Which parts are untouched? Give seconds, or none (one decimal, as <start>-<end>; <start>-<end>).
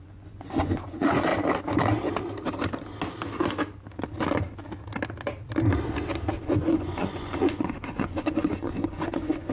1.3-6.4